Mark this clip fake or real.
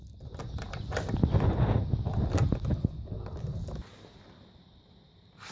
real